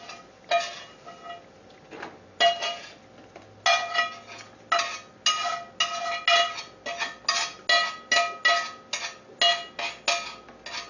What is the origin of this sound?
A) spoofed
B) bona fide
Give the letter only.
B